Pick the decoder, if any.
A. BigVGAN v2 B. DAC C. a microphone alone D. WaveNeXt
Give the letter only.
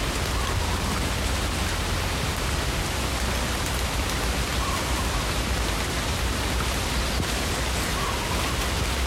C